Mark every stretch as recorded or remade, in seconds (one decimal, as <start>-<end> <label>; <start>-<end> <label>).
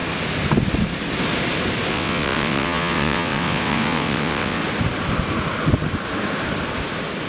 0.0-1.9 recorded; 1.9-4.6 remade; 4.6-7.3 recorded